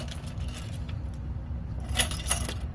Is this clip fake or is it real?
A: real